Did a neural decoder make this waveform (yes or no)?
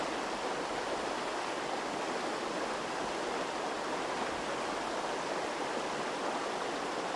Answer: no